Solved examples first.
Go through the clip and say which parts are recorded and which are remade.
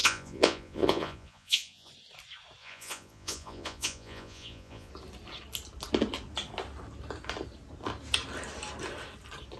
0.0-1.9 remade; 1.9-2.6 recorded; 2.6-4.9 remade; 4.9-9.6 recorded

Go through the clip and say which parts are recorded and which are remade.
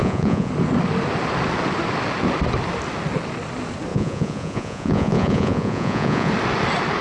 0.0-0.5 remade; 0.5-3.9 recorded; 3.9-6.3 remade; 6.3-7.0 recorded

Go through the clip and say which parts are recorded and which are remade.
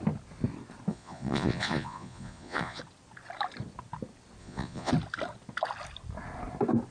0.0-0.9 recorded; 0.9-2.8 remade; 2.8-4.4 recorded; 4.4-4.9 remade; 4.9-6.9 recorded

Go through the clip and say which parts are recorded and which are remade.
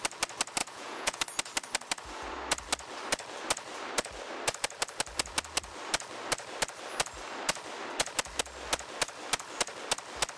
0.0-0.6 recorded; 0.6-1.2 remade; 1.2-10.4 recorded